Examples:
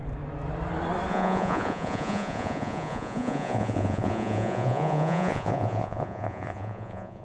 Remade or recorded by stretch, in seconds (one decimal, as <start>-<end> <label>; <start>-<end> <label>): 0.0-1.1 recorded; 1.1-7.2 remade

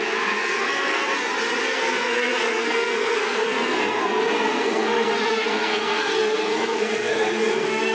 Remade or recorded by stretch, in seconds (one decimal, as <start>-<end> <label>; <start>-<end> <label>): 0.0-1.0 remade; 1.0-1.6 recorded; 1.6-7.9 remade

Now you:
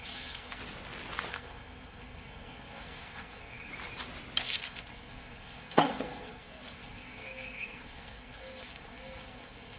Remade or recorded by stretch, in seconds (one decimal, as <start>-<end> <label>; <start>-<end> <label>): 0.0-0.6 remade; 0.6-1.3 recorded; 1.3-3.7 remade; 3.7-4.4 recorded; 4.4-9.8 remade

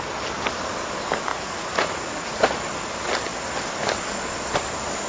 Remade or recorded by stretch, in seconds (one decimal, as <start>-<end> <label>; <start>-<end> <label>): 0.0-1.3 recorded; 1.3-2.5 remade; 2.5-5.1 recorded